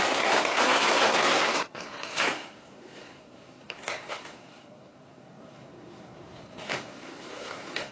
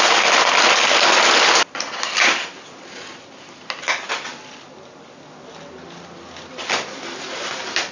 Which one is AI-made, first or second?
first